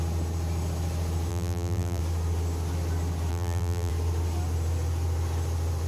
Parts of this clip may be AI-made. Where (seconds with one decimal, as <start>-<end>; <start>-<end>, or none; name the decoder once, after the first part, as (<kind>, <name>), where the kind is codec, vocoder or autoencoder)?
1.3-2.0 (vocoder, BigVGAN v2); 3.3-3.9